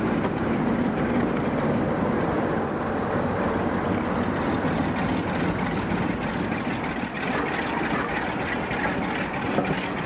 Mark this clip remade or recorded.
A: recorded